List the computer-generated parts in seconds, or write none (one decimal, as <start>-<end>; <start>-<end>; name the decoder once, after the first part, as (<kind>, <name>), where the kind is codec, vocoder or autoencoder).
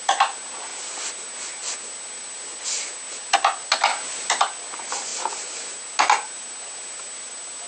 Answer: none